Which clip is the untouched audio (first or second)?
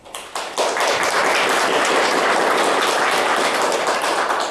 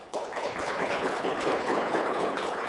first